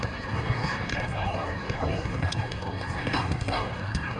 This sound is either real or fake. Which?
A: fake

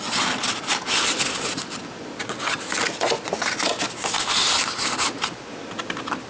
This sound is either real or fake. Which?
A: real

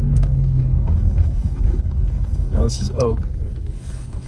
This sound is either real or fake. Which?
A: fake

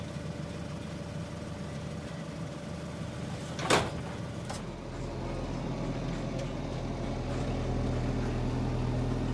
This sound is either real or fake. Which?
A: real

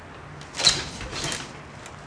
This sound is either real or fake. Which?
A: real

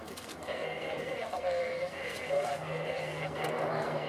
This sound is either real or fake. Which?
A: fake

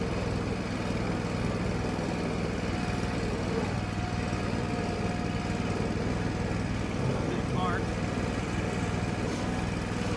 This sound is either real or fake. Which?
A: real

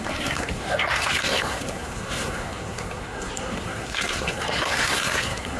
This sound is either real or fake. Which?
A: fake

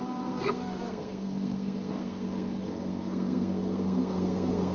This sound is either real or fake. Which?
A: fake